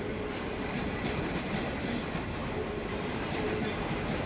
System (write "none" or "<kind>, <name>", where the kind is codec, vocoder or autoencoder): vocoder, BigVGAN v2